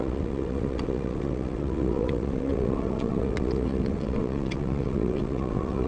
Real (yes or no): no